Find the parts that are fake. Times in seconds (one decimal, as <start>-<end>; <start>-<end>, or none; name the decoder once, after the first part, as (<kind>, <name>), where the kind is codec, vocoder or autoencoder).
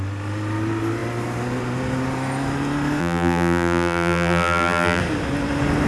3.0-5.0 (vocoder, BigVGAN v2)